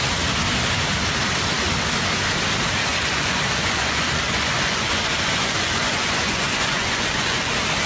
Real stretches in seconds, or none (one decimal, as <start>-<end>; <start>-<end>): 0.0-2.9; 7.5-7.9

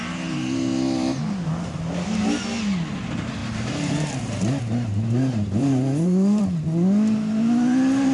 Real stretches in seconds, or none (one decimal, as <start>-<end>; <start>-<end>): 0.0-3.4; 6.4-8.1